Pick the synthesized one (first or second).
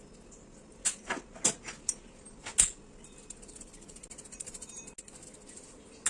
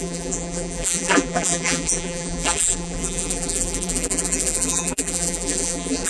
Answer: second